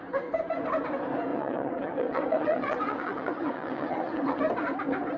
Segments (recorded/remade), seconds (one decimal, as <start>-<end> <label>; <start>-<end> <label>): 0.0-1.3 recorded; 1.3-4.4 remade; 4.4-5.2 recorded